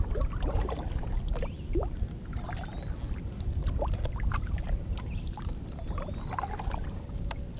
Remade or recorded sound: recorded